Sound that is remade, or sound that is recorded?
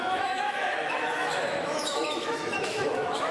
remade